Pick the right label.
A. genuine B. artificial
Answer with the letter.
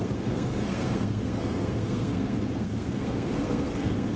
B